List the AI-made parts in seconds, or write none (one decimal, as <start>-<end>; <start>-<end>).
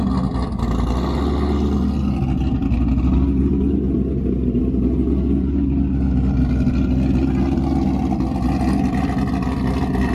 none